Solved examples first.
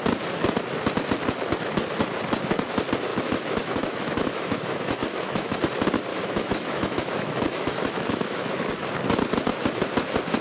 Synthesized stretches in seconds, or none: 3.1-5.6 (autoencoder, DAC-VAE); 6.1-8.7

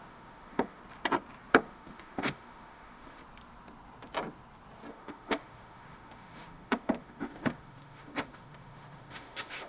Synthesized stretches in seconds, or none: 0.0-0.8 (autoencoder, DAC-VAE); 1.5-3.2; 4.9-9.7

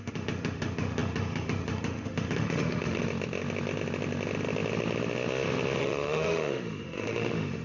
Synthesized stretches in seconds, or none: 0.0-3.0 (autoencoder, DAC-VAE); 5.8-7.6

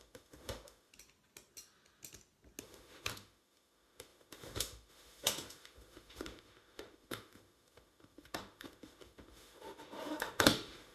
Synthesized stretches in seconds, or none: 0.0-0.9 (autoencoder, DAC-VAE); 2.6-10.9

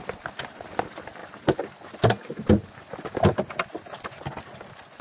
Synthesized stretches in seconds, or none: none

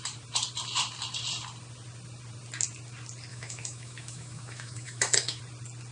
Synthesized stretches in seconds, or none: 3.3-5.4 (autoencoder, DAC-VAE)

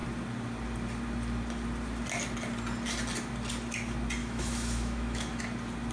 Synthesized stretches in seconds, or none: 4.2-5.4 (autoencoder, DAC-VAE)

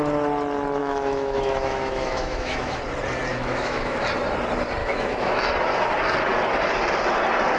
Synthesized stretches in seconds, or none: 0.8-2.8 (autoencoder, DAC-VAE); 3.3-4.0; 4.8-5.4